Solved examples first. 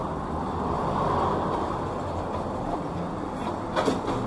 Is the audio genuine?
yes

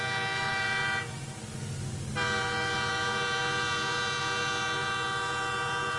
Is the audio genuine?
yes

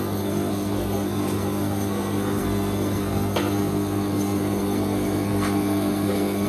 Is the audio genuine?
no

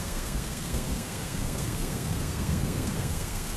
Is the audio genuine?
no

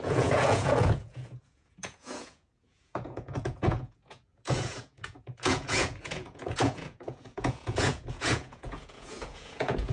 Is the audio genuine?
no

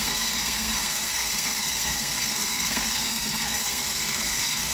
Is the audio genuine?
no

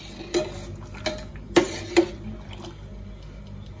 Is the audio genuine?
yes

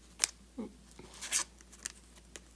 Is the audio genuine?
yes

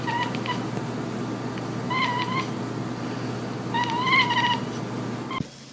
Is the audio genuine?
yes